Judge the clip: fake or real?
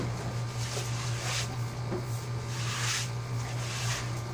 real